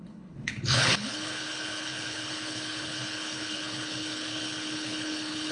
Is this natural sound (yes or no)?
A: no